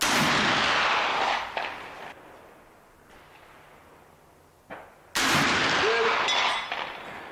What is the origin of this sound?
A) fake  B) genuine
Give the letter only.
B